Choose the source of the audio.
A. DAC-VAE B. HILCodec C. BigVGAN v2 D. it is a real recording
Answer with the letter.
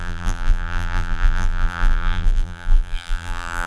C